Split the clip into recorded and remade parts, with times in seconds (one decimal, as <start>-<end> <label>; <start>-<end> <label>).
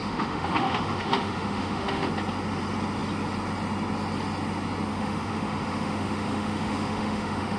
0.0-2.1 remade; 2.1-4.9 recorded; 4.9-7.6 remade